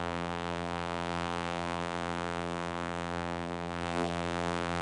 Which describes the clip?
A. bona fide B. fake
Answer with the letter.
B